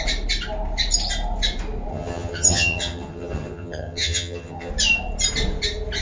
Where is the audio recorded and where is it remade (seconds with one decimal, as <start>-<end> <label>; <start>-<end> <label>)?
0.0-1.9 recorded; 1.9-4.7 remade; 4.7-6.0 recorded